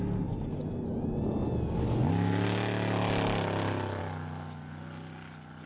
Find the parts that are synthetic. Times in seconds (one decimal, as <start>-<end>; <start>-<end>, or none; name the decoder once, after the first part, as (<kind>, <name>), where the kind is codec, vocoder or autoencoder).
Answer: none